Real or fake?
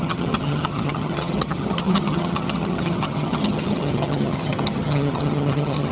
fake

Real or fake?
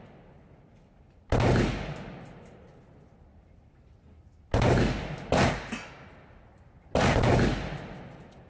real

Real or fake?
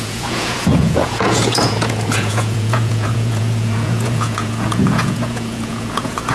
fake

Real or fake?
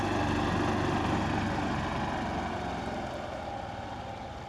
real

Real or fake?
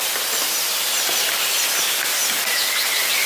real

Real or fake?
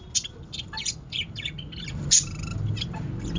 real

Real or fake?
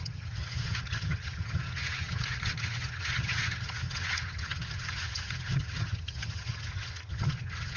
fake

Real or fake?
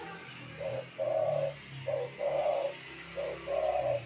real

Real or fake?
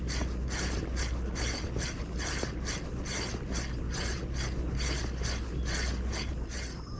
real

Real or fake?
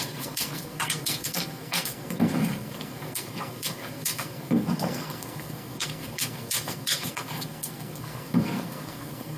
fake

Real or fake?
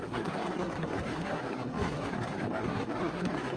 fake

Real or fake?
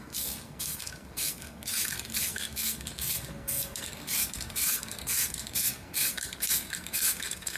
fake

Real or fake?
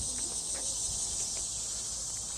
real